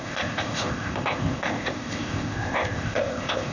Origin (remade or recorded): remade